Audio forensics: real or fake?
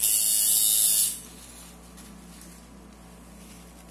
real